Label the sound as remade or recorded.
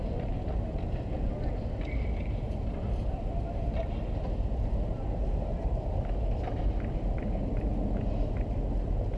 recorded